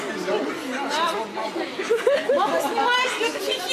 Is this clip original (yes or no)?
yes